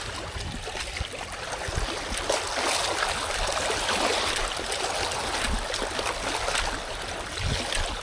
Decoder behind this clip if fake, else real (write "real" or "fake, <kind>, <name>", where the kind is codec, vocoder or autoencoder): real